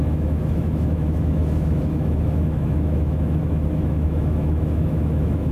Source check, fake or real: fake